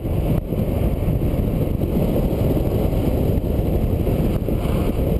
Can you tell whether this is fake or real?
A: real